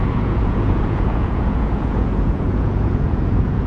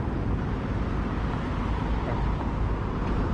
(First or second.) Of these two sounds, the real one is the second